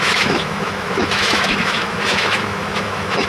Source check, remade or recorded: remade